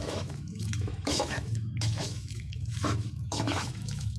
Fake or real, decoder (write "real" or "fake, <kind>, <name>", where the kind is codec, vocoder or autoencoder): fake, autoencoder, DAC-VAE